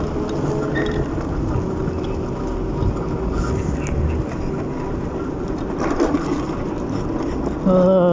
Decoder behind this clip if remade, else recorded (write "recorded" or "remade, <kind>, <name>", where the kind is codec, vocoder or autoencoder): recorded